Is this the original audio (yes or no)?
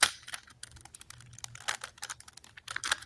yes